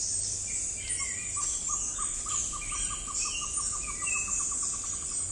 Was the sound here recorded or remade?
recorded